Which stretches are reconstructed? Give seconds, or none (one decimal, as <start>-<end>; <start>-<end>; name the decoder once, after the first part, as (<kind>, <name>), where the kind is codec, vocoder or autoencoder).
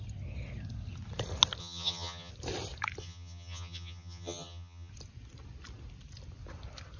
1.6-2.3 (vocoder, HiFi-GAN); 3.0-4.9